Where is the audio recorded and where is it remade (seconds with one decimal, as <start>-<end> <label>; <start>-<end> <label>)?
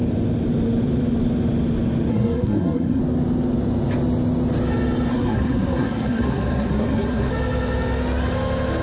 0.0-2.1 recorded; 2.1-3.0 remade; 3.0-5.1 recorded; 5.1-7.3 remade; 7.3-8.8 recorded